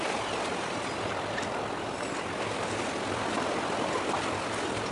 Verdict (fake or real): real